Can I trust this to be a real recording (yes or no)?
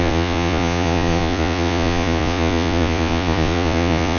no